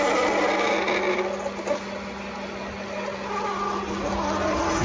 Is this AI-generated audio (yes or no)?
no